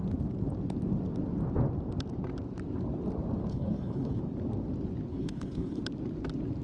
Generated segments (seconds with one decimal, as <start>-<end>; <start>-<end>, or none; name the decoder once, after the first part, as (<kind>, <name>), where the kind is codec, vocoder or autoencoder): 3.5-4.2 (codec, HILCodec); 5.1-5.8